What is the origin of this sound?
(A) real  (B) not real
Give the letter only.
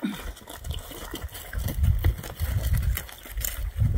A